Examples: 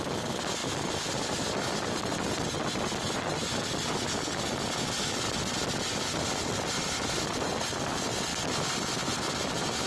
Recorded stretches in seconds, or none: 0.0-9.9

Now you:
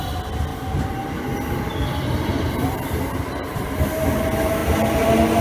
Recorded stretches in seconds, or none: 0.0-5.4